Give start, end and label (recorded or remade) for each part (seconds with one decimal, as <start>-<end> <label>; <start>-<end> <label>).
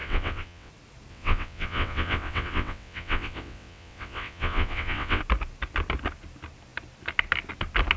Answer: 0.0-0.7 remade; 0.7-1.1 recorded; 1.1-5.2 remade; 5.2-8.0 recorded